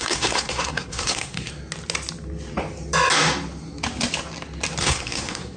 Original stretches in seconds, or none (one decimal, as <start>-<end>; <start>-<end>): 1.5-4.8